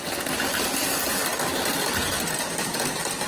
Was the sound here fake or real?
real